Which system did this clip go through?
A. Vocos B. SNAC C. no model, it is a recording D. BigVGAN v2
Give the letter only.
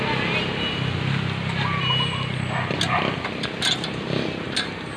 C